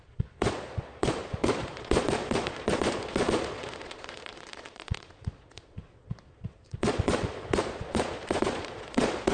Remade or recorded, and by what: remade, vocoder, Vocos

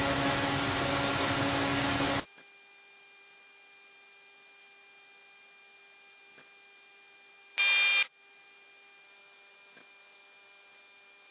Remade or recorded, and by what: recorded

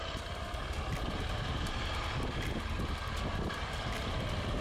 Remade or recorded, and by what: recorded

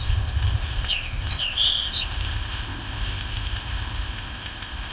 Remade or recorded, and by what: remade, codec, ZipCodec